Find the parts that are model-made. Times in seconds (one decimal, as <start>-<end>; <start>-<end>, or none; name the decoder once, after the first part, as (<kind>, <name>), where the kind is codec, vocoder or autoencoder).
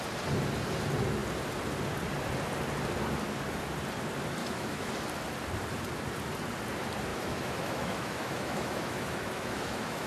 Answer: 4.4-4.9 (autoencoder, DAC-VAE); 7.1-10.1